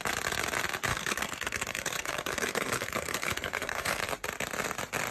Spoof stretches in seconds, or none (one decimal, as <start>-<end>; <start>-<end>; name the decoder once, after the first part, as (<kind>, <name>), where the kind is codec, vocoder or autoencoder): 0.9-4.0 (codec, SNAC)